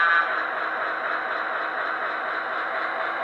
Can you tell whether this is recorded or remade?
recorded